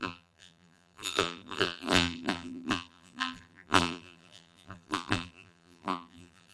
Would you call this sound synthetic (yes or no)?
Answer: yes